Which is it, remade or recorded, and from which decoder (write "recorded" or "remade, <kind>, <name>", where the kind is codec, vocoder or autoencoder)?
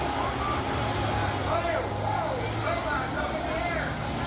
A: recorded